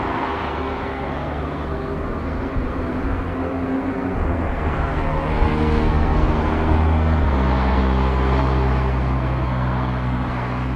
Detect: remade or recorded remade